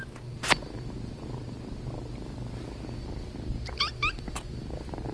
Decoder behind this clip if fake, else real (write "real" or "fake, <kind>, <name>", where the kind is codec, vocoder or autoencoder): real